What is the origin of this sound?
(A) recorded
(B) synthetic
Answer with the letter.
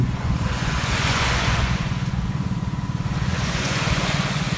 B